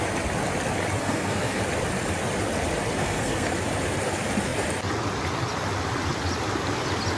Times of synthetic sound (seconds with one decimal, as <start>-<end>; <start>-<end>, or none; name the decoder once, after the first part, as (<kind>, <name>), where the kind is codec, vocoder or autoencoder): 1.0-1.6 (codec, SNAC); 3.0-3.5